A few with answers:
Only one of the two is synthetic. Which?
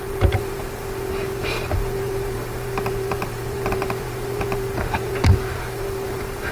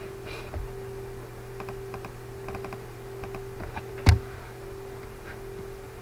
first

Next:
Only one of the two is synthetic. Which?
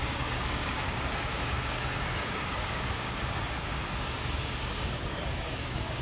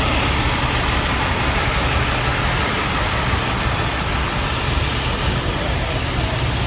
first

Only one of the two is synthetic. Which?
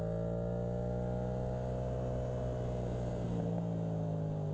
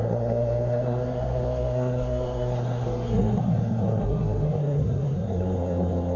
second